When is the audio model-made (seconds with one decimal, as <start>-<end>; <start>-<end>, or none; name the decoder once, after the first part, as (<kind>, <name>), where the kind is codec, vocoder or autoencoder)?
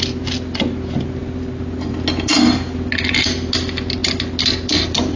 none